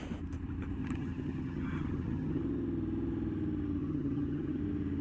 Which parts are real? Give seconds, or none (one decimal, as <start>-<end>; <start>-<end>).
0.0-0.8; 2.4-3.8; 4.6-5.0